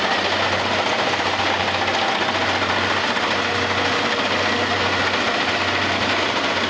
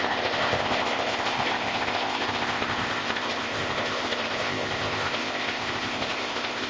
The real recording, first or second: first